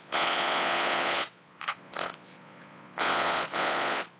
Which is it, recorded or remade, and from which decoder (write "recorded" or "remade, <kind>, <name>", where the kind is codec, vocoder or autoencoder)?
remade, vocoder, Vocos